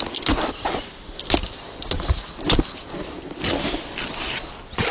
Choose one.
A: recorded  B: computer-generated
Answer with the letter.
A